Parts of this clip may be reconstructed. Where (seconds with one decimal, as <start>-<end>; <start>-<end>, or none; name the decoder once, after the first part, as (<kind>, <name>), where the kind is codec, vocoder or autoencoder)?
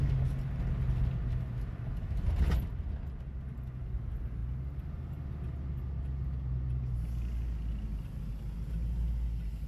none